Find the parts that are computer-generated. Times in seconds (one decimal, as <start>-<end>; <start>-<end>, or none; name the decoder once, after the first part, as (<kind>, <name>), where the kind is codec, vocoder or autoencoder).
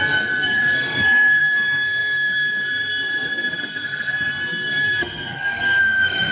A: 0.0-6.3 (codec, SNAC)